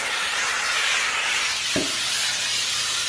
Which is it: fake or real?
fake